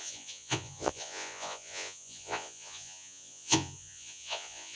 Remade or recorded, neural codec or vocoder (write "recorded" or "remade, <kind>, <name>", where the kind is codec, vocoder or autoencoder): remade, vocoder, Vocos